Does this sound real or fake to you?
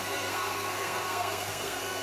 fake